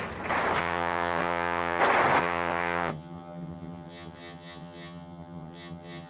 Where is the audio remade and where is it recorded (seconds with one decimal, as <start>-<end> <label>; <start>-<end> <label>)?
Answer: 0.0-0.6 recorded; 0.6-1.8 remade; 1.8-2.2 recorded; 2.2-6.1 remade